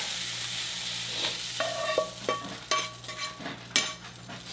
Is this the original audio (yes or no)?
yes